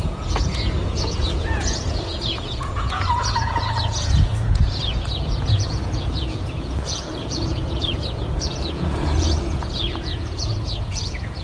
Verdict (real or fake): fake